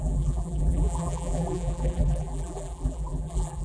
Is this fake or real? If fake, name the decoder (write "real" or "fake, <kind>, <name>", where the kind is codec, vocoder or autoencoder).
fake, vocoder, BigVGAN v2